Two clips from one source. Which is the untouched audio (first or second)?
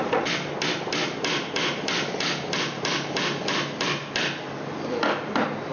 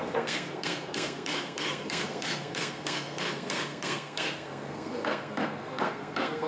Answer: first